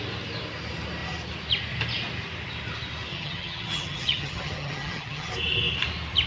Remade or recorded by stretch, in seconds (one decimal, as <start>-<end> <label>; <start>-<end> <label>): 0.0-3.1 recorded; 3.1-5.3 remade; 5.3-6.3 recorded